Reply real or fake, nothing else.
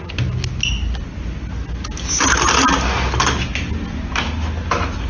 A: real